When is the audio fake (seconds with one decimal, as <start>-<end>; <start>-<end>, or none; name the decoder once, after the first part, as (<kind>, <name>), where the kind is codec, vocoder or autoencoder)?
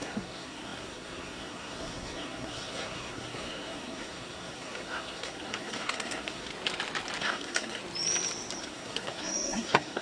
0.0-6.5 (codec, SNAC); 7.2-7.8; 8.6-10.0